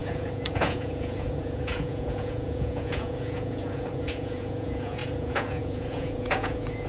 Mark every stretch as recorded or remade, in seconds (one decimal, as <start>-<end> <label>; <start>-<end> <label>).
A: 0.0-6.9 remade